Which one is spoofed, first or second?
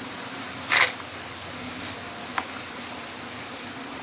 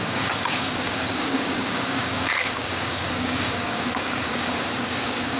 second